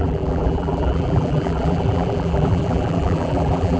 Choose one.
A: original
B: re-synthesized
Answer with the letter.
B